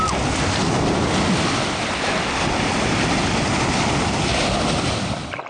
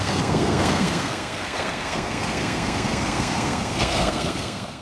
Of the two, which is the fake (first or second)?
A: second